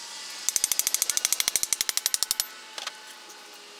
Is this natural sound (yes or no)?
yes